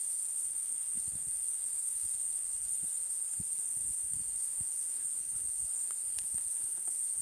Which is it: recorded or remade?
remade